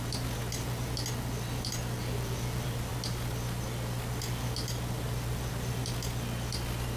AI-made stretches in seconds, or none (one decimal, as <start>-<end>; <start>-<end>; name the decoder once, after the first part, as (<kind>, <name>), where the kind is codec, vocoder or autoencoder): none